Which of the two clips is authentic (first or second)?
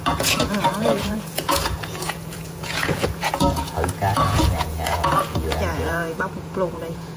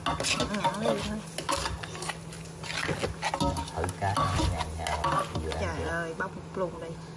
second